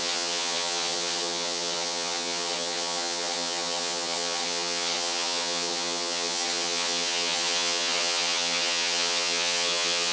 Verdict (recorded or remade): remade